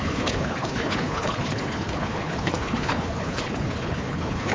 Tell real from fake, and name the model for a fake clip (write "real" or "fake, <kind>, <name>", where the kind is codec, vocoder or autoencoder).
fake, codec, HILCodec